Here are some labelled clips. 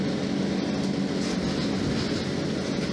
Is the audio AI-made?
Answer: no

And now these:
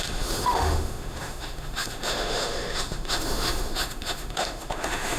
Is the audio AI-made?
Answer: yes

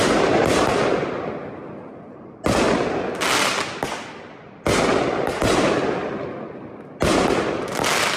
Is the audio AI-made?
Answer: no